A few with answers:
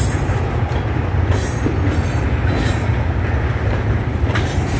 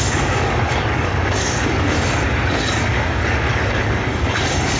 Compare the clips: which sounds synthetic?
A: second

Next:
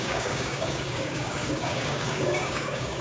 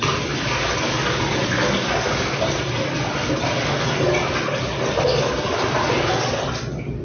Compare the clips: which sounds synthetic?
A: first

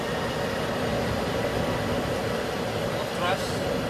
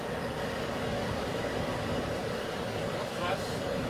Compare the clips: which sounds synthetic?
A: second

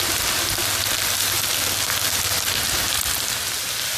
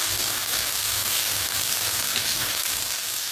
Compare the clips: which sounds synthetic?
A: second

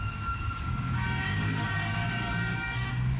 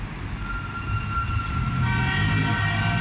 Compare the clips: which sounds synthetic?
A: first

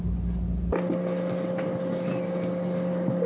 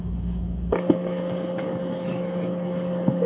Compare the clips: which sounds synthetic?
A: second